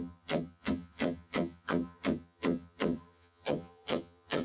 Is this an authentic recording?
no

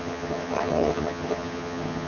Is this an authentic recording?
no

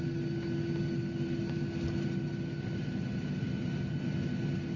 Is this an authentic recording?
yes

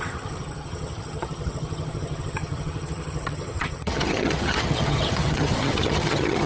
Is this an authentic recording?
no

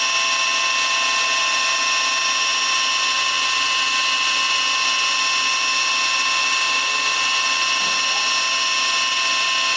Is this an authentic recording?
yes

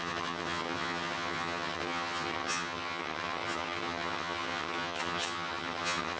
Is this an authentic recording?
no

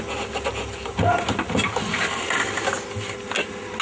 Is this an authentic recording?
yes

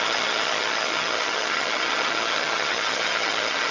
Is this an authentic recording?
no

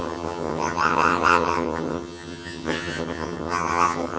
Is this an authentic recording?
no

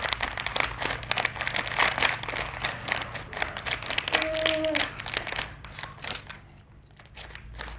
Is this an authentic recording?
yes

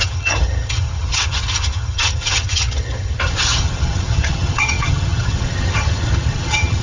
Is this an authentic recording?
no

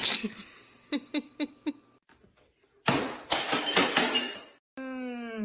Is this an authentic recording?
yes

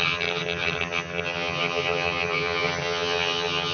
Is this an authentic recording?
no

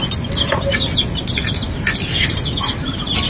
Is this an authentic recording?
yes